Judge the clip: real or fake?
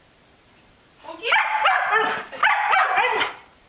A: fake